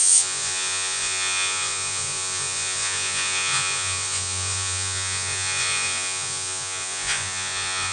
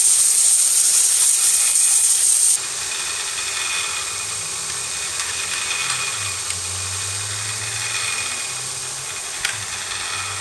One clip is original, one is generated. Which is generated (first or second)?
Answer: first